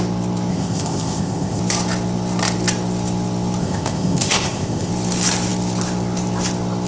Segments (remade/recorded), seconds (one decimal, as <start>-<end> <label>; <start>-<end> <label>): 0.0-0.5 recorded; 0.5-1.6 remade; 1.6-3.6 recorded; 3.6-4.9 remade; 4.9-6.9 recorded